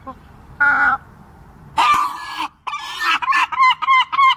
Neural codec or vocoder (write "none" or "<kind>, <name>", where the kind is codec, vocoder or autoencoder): vocoder, BigVGAN v2